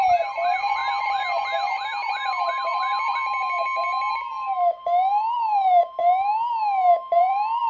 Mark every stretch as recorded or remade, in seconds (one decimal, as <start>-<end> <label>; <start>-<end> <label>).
0.0-6.0 remade; 6.0-7.2 recorded; 7.2-7.7 remade

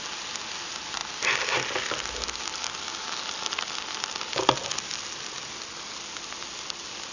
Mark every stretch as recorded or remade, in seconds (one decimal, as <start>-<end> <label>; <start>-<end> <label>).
0.0-7.1 recorded

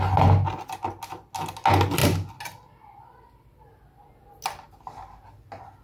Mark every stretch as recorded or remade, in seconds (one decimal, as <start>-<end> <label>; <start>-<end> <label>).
0.0-5.8 recorded

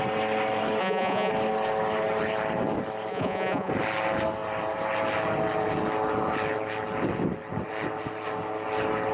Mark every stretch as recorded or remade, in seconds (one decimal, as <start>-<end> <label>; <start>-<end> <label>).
0.0-0.8 recorded; 0.8-1.3 remade; 1.3-3.1 recorded; 3.1-3.7 remade; 3.7-9.1 recorded

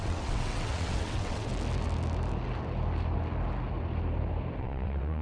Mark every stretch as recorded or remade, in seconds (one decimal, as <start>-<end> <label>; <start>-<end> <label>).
0.0-1.5 remade; 1.5-4.6 recorded; 4.6-5.2 remade